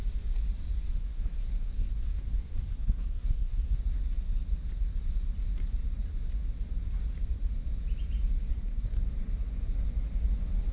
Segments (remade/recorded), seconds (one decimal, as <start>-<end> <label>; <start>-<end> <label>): 0.0-1.0 recorded; 1.0-3.8 remade; 3.8-8.5 recorded; 8.5-9.0 remade; 9.0-10.7 recorded

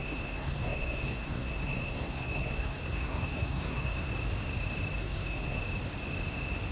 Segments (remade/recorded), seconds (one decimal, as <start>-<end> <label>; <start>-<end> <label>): 0.0-4.1 remade; 4.1-5.0 recorded; 5.0-5.6 remade; 5.6-6.7 recorded